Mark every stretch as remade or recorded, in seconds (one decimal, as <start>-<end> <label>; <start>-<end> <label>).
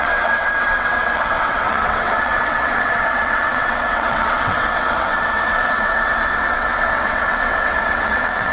0.0-8.5 remade